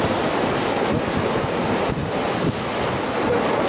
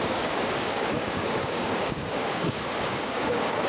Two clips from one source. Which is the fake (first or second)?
second